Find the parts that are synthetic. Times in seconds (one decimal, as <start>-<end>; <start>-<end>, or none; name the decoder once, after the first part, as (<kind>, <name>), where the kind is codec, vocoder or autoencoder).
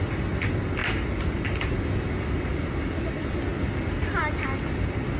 0.8-1.4 (vocoder, BigVGAN v2); 3.5-4.2